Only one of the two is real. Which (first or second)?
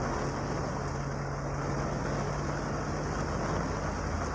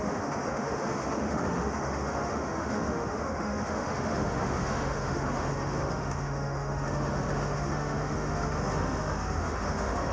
first